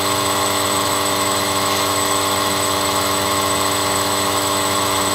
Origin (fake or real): fake